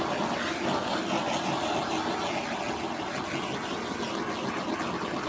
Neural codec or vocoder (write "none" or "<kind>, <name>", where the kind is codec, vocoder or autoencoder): none